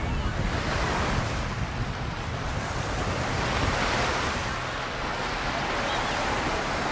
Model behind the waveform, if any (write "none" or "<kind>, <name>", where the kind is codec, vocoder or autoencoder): none